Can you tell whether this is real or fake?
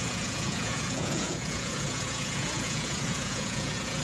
fake